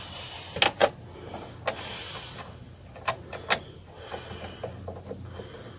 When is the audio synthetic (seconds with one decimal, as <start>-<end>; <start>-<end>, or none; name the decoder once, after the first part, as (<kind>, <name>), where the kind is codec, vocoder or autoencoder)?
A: none